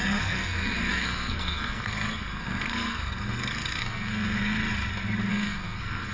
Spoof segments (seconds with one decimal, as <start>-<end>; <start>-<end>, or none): 0.0-4.6; 5.3-6.1